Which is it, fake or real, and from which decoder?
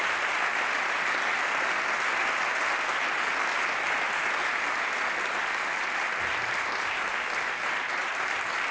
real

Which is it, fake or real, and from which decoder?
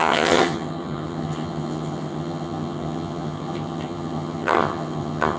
fake, vocoder, HiFi-GAN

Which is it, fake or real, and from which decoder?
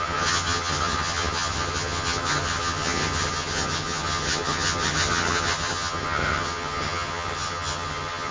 fake, vocoder, HiFi-GAN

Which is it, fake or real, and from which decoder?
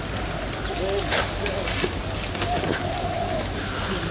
real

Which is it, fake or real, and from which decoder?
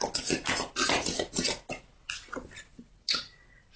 real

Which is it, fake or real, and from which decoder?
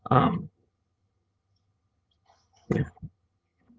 fake, vocoder, HiFi-GAN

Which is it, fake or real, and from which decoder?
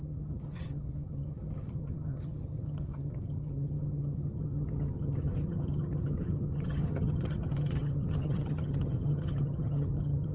fake, vocoder, HiFi-GAN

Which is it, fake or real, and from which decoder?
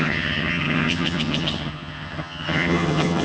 fake, vocoder, HiFi-GAN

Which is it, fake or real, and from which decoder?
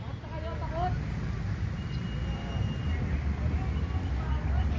real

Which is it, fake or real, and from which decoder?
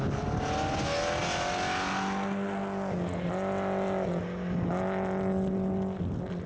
real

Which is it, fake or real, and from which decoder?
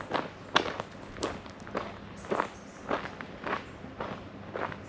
real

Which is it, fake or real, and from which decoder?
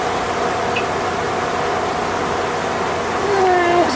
real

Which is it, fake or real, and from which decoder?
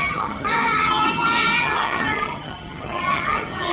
fake, vocoder, HiFi-GAN